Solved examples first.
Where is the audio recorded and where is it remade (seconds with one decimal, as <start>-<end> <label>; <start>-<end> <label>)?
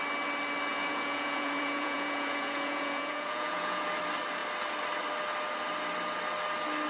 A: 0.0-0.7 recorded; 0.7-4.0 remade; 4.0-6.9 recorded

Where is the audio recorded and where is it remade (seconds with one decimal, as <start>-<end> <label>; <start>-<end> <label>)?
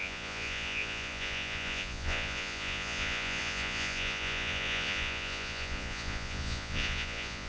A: 0.0-7.5 remade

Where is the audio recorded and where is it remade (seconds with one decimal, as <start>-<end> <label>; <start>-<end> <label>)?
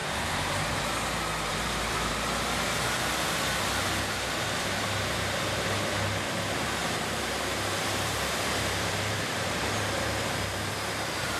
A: 0.0-0.7 remade; 0.7-1.5 recorded; 1.5-2.1 remade; 2.1-6.8 recorded; 6.8-11.4 remade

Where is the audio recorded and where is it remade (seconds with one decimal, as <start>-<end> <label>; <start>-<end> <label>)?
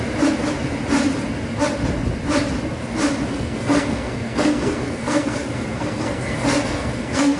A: 0.0-3.3 recorded; 3.3-7.4 remade